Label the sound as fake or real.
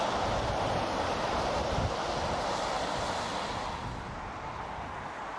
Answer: real